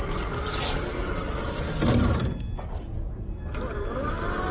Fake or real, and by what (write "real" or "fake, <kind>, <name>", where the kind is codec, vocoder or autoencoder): real